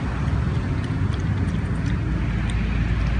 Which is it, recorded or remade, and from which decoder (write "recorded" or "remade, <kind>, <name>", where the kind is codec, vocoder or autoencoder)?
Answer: recorded